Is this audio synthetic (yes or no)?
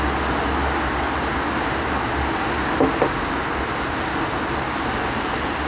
no